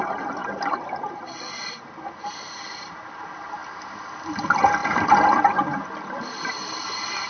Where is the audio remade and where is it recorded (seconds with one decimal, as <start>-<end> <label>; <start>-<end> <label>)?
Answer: 0.0-7.3 remade